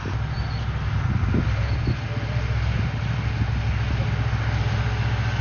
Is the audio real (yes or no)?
yes